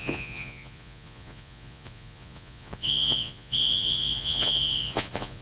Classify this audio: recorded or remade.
remade